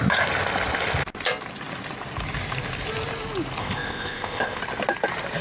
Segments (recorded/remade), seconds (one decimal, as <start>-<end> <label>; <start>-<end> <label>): 0.0-3.6 recorded; 3.6-4.6 remade; 4.6-5.4 recorded